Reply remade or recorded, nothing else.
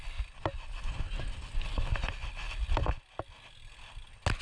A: recorded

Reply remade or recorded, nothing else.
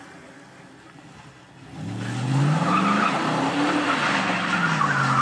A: recorded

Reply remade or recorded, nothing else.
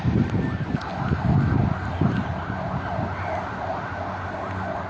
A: recorded